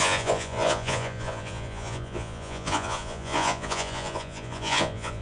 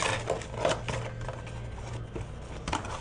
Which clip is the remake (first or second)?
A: first